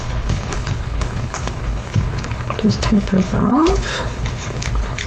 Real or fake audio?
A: fake